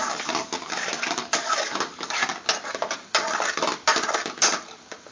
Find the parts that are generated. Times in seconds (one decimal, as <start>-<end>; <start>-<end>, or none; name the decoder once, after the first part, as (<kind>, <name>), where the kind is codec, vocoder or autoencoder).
0.0-2.2 (codec, DAC)